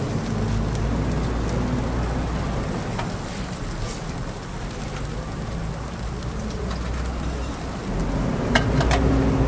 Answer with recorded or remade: recorded